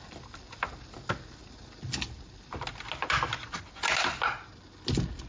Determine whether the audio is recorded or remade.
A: recorded